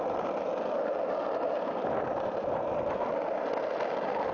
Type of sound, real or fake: real